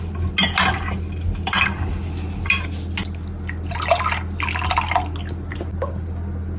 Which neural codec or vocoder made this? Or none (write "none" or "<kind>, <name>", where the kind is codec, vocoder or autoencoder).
none